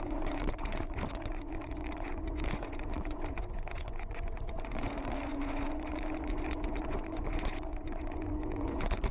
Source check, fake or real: fake